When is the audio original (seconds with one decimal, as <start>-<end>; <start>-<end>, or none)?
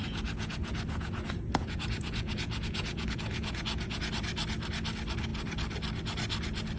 4.1-6.8